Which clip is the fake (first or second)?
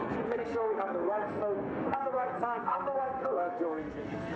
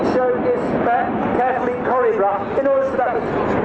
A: first